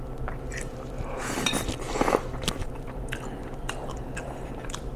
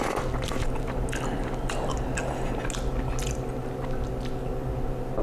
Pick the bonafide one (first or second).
second